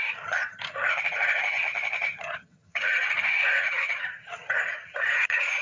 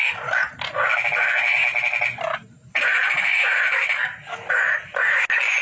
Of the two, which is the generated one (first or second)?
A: first